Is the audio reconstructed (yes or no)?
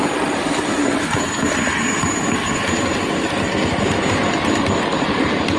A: no